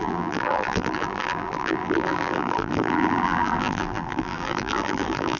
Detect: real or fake fake